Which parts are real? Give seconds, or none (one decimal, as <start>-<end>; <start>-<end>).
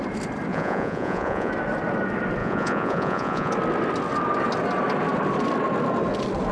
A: 0.0-0.5; 1.5-2.4; 3.5-6.5